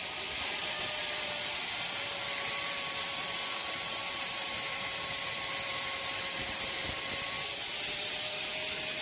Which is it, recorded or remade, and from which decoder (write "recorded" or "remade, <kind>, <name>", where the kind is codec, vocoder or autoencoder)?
remade, vocoder, BigVGAN v2